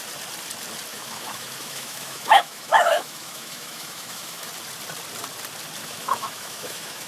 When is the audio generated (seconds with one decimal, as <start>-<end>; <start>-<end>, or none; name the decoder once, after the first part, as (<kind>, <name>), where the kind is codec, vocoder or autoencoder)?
0.9-4.5 (autoencoder, DAC-VAE); 5.8-7.1